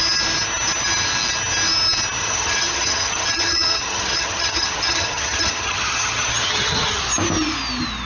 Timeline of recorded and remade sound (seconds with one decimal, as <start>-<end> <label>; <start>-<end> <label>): 0.0-2.2 recorded; 2.2-7.0 remade; 7.0-8.0 recorded